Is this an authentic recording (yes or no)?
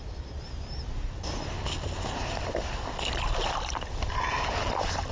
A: yes